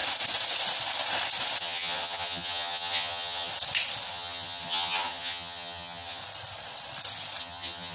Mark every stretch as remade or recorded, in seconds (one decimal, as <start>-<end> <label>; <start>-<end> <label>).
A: 0.0-1.6 recorded; 1.6-3.5 remade; 3.5-4.1 recorded; 4.1-6.2 remade; 6.2-7.4 recorded; 7.4-7.9 remade